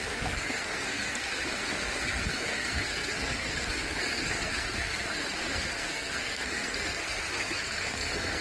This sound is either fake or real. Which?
fake